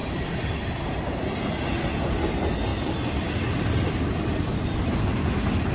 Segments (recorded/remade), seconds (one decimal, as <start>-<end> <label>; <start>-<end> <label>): 0.0-5.7 recorded